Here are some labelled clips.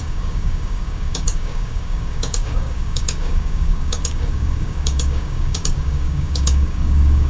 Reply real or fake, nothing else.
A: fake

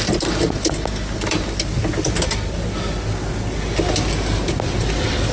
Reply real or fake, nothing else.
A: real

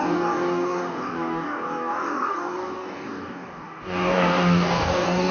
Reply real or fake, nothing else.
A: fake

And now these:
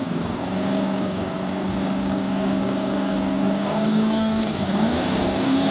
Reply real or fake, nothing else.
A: fake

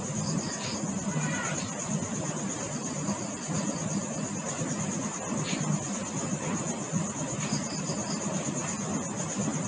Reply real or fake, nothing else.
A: real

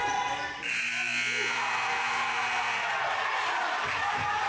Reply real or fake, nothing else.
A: real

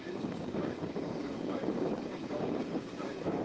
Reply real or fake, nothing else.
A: fake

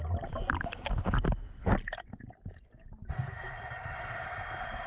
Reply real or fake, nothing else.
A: real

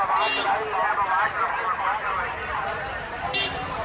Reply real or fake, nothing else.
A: real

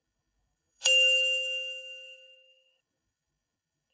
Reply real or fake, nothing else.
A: fake